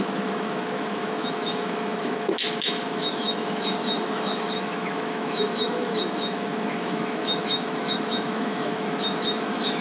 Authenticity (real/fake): fake